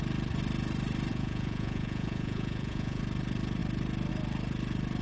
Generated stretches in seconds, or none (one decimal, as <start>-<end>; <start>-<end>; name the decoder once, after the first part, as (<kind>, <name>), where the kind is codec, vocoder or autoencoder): 1.1-3.0 (vocoder, Vocos)